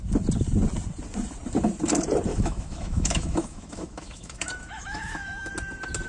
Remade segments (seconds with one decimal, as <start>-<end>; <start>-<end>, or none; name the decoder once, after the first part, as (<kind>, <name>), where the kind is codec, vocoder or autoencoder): 2.3-5.5 (autoencoder, DAC-VAE)